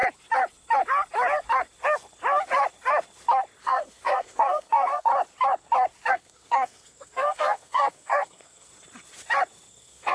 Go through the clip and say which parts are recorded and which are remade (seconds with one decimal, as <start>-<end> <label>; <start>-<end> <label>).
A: 0.0-3.6 recorded; 3.6-5.1 remade; 5.1-6.1 recorded; 6.1-8.7 remade; 8.7-9.7 recorded; 9.7-10.1 remade